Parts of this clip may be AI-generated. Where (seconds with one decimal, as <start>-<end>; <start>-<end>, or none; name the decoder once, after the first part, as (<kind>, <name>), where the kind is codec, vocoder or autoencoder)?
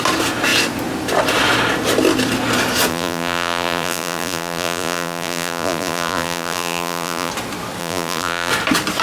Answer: 2.9-7.3 (vocoder, BigVGAN v2); 7.8-8.5